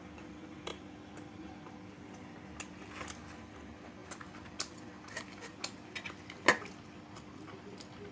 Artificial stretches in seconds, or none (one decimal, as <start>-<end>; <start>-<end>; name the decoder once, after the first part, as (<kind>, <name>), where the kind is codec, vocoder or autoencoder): none

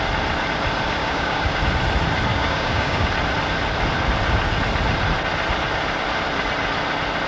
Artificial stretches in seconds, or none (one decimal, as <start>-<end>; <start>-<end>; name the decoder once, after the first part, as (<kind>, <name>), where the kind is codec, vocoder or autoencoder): 1.0-1.6 (codec, DAC); 2.3-3.1